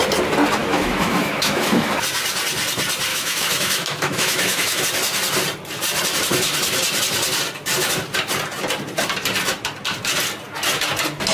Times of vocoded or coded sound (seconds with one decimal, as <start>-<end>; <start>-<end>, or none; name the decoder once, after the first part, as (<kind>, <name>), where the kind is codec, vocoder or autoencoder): 0.6-1.9 (autoencoder, DAC-VAE); 3.1-4.8